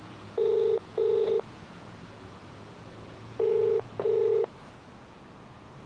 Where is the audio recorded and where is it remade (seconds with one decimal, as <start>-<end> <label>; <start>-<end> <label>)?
0.0-5.9 remade